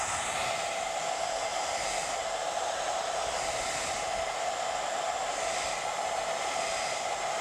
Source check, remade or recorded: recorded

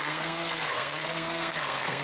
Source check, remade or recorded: remade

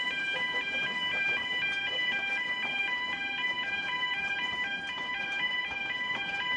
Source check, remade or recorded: remade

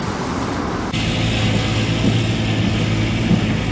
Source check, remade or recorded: recorded